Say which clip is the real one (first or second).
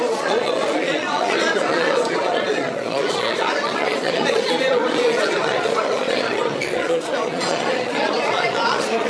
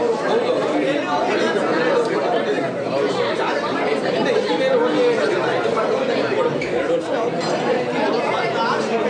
second